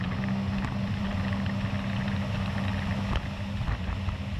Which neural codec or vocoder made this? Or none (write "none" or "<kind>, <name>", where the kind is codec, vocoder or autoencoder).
none